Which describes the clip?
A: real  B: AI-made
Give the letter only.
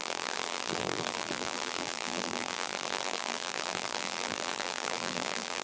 B